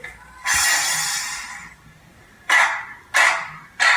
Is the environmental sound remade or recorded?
recorded